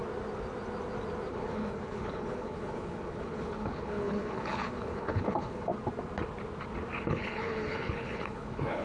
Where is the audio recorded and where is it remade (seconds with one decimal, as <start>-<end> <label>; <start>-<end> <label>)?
0.0-1.3 recorded; 1.3-5.7 remade; 5.7-7.0 recorded; 7.0-8.8 remade